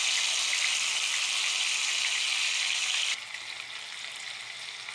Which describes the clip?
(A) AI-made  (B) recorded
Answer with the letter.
B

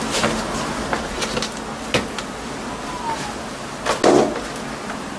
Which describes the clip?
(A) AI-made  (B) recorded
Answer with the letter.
B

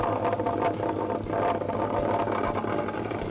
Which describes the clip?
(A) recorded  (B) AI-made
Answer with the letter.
A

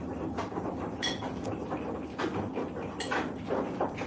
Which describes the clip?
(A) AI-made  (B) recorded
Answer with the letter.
B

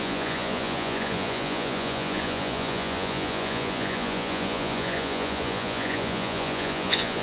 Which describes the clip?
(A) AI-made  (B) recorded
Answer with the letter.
A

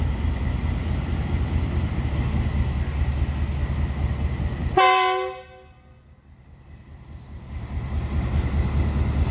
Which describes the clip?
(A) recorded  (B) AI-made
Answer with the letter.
A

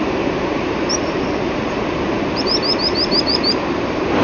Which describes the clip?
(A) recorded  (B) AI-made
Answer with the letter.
B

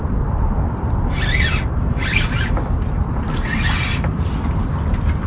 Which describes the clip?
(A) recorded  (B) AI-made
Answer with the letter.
B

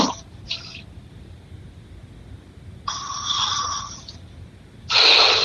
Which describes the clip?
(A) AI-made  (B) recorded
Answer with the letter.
B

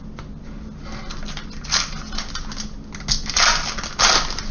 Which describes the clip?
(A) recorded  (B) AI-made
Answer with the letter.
A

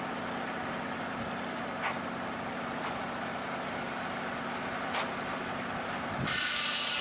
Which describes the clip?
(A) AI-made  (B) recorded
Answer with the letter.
B